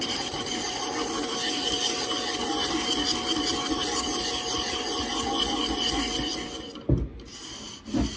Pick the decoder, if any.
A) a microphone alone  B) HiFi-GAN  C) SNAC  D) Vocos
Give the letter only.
A